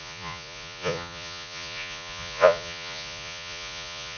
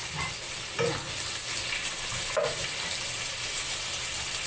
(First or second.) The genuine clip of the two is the second